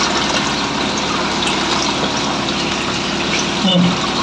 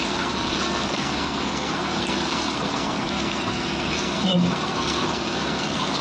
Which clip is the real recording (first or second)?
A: first